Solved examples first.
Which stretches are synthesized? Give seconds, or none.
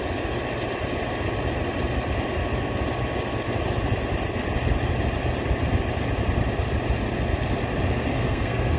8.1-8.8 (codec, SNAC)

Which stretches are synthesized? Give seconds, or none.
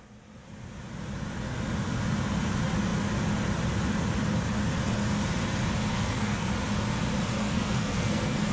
5.9-6.5 (codec, SNAC); 7.4-8.5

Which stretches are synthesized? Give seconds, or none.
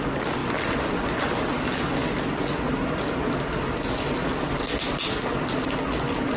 none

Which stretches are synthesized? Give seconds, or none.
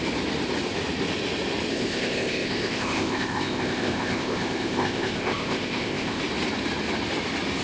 1.7-6.2 (codec, ZipCodec)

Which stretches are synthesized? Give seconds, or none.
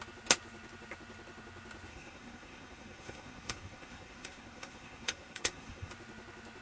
1.9-5.9 (codec, SNAC)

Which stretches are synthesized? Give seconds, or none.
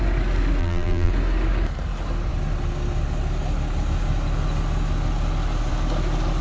0.6-1.1 (vocoder, BigVGAN v2)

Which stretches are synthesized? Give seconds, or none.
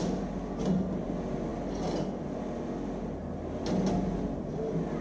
none